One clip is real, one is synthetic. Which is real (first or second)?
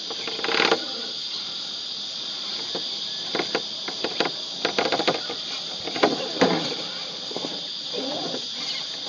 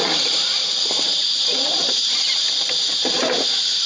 first